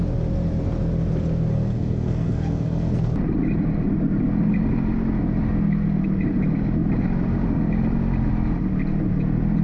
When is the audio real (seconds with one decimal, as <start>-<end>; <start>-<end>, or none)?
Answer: 0.0-1.5; 3.1-9.6